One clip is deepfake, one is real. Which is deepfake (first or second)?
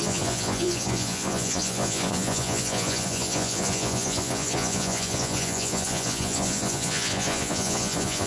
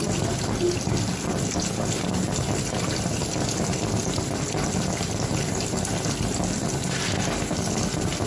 first